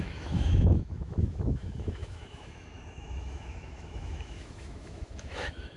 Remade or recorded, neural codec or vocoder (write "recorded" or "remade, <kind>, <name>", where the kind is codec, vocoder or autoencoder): remade, autoencoder, DAC-VAE